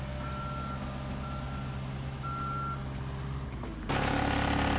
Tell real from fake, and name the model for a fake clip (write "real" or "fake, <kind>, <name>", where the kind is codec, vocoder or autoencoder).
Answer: real